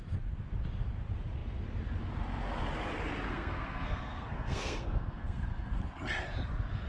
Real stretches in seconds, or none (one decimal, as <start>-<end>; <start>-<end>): 0.0-3.3; 5.8-6.9